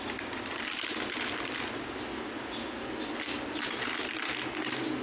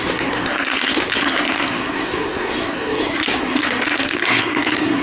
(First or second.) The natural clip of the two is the first